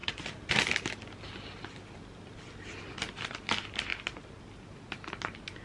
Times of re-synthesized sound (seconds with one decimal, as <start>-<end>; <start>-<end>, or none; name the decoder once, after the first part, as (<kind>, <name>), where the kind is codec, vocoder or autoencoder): none